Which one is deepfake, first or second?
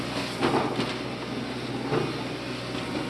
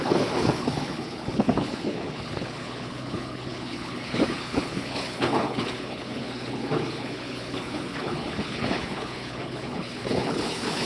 second